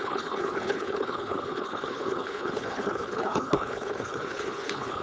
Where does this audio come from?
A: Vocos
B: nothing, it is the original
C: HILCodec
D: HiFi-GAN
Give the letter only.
C